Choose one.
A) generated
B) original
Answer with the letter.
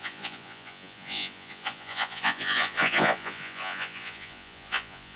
A